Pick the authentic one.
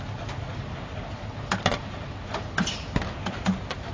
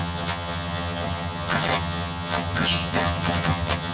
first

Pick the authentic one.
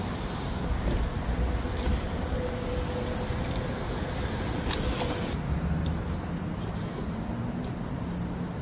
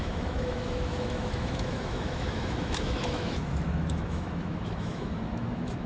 first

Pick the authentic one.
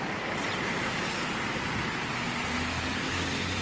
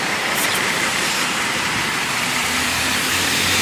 first